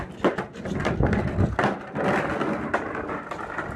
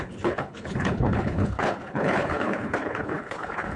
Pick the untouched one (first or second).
first